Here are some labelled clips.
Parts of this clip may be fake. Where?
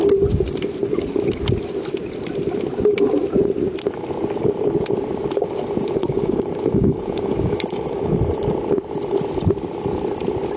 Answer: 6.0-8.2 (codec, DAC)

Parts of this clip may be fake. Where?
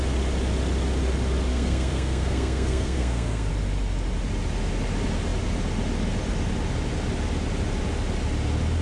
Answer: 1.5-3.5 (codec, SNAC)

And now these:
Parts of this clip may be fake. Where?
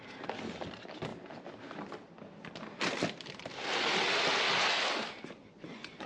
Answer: 5.4-6.1 (vocoder, Vocos)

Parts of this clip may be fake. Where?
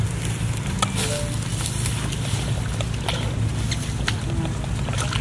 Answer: none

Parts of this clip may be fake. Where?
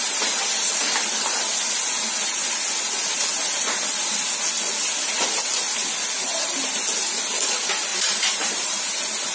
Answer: 7.9-8.8 (vocoder, BigVGAN v2)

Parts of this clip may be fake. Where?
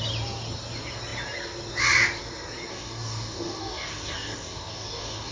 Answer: 2.7-5.3 (codec, DAC)